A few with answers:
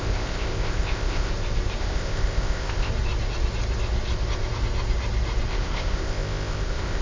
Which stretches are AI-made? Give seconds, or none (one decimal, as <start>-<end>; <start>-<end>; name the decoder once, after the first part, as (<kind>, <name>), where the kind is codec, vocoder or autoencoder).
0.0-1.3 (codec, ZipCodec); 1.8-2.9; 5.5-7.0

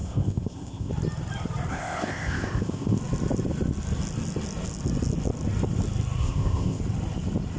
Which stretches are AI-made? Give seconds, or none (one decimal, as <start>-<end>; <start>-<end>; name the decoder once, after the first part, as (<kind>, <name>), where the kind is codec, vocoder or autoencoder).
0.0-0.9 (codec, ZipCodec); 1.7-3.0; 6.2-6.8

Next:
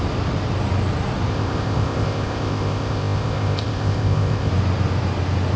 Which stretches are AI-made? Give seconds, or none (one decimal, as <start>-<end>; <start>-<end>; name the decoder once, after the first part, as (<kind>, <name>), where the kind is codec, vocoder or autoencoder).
1.3-4.5 (codec, ZipCodec)